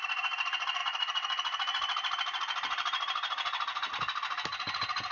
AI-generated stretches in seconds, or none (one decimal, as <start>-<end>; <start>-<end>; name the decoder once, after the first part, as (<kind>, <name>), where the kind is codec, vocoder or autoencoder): none